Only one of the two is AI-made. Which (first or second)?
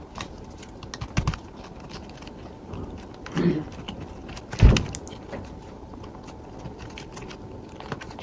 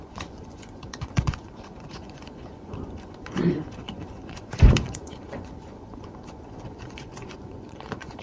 second